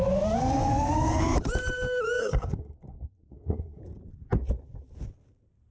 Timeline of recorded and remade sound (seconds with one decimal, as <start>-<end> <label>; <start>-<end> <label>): 0.0-2.2 recorded; 2.2-3.8 remade; 3.8-5.7 recorded